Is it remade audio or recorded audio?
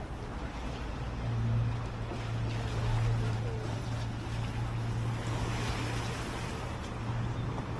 recorded